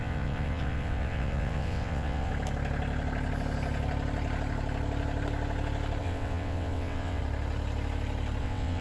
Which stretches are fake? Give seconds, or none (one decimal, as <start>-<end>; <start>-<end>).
0.0-2.3; 6.0-7.2; 8.4-8.8